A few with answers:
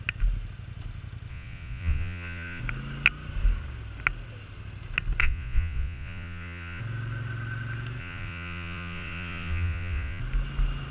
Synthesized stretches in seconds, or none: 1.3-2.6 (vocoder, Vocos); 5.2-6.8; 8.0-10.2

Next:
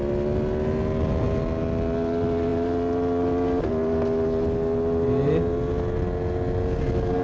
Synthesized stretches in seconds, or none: none

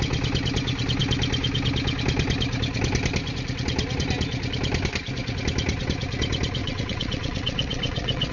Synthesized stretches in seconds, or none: 6.6-8.3 (vocoder, WaveNeXt)

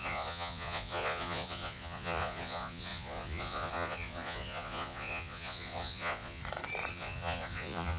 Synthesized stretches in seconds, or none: 0.0-6.4 (vocoder, Vocos); 6.9-8.0